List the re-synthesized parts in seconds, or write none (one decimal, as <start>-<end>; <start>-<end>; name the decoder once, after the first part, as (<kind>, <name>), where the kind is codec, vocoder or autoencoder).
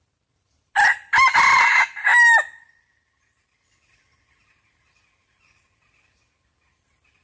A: none